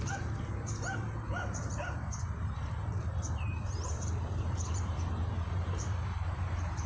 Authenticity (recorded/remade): remade